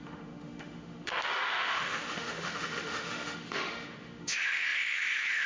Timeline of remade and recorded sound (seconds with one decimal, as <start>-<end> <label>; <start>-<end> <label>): 0.0-5.5 remade